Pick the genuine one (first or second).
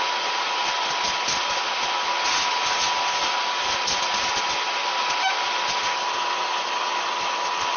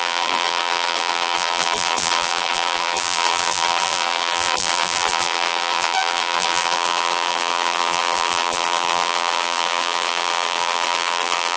first